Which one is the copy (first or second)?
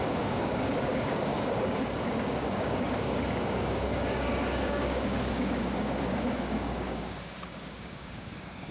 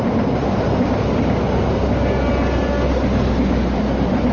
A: first